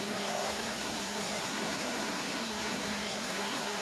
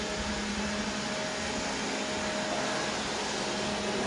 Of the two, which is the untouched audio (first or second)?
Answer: second